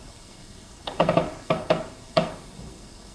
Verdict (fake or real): fake